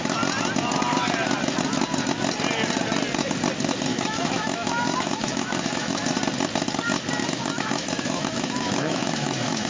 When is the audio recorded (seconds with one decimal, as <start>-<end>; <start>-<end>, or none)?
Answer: 0.0-3.9; 6.0-7.2